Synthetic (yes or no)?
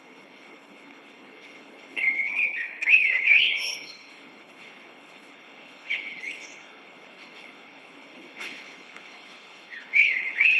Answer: yes